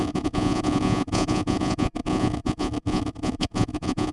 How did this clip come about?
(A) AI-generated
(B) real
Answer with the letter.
A